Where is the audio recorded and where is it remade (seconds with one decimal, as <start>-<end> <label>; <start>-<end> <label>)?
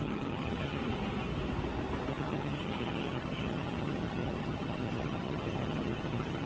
0.0-0.8 remade; 0.8-2.1 recorded; 2.1-6.5 remade